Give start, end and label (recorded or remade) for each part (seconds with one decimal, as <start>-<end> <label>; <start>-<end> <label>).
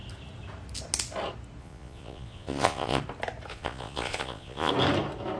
0.0-1.6 recorded; 1.6-3.0 remade; 3.0-3.5 recorded; 3.5-4.7 remade; 4.7-5.4 recorded